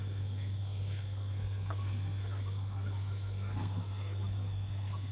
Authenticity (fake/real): fake